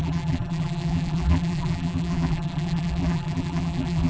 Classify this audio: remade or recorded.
remade